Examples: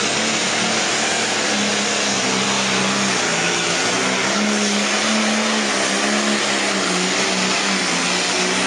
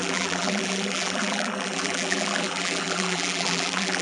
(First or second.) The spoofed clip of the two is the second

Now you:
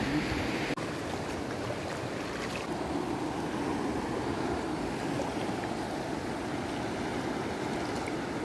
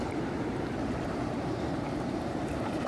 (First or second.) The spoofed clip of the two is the second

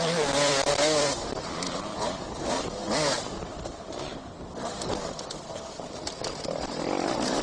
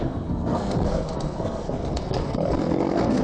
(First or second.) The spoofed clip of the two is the second